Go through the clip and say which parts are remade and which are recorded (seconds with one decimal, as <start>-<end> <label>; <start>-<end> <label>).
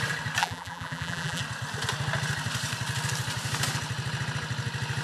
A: 0.0-0.4 recorded; 0.4-1.4 remade; 1.4-5.0 recorded